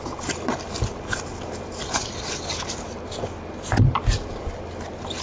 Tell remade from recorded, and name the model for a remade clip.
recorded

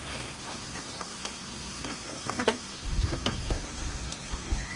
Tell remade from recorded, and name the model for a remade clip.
remade, codec, SNAC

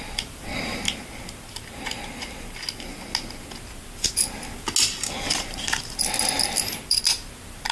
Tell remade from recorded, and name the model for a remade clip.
recorded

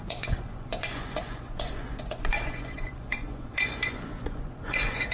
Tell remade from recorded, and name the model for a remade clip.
remade, vocoder, Vocos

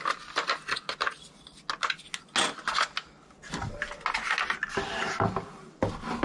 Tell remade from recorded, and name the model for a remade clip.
recorded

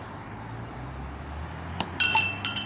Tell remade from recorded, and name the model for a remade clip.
recorded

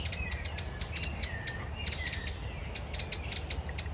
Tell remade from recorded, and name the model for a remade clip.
recorded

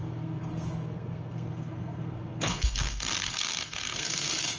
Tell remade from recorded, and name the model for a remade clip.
remade, codec, SNAC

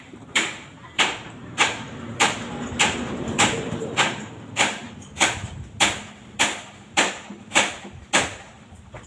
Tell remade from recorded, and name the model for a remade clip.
remade, vocoder, BigVGAN v2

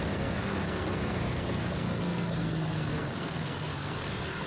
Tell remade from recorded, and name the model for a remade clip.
remade, codec, SNAC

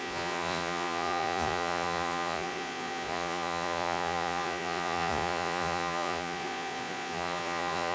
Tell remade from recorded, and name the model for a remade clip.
remade, vocoder, Vocos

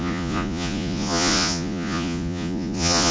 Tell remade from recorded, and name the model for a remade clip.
remade, vocoder, Vocos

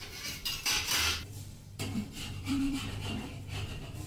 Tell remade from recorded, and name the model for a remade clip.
remade, vocoder, BigVGAN v2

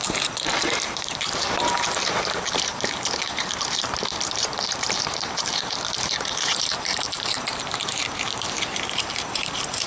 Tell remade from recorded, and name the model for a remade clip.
remade, vocoder, BigVGAN v2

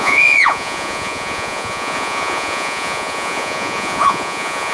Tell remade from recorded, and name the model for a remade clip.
remade, vocoder, Vocos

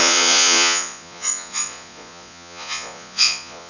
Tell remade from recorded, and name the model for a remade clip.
remade, vocoder, Vocos